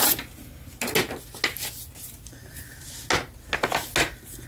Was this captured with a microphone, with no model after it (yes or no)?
yes